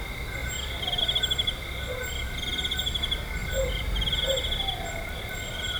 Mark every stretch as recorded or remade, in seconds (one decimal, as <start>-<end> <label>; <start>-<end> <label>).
0.0-0.4 recorded; 0.4-1.0 remade; 1.0-3.4 recorded; 3.4-4.2 remade; 4.2-5.8 recorded